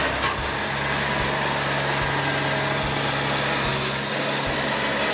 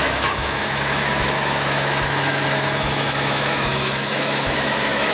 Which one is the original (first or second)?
first